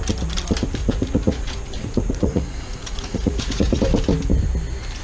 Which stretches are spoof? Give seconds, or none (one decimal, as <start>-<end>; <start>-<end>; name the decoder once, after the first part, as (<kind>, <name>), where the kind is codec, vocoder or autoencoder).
0.8-3.8 (vocoder, Vocos)